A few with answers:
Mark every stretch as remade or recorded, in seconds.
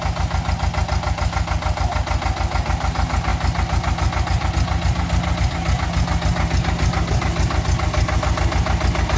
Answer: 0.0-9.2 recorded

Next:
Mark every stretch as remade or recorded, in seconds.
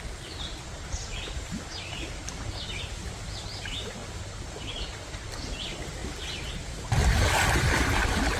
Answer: 0.0-4.0 recorded; 4.0-4.7 remade; 4.7-7.0 recorded; 7.0-7.6 remade; 7.6-8.4 recorded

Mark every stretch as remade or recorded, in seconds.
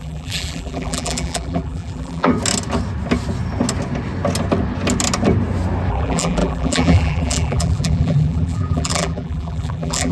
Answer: 0.0-2.3 remade; 2.3-5.9 recorded; 5.9-10.1 remade